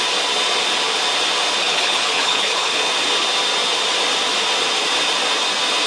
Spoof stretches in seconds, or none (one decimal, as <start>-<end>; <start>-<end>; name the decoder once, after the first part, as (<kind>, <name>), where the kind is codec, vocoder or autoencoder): 1.6-2.8 (codec, HILCodec)